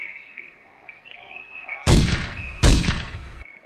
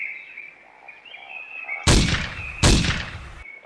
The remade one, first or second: first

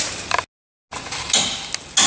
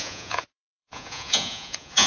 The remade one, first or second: second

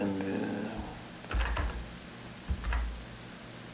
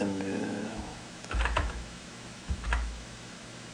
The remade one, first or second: second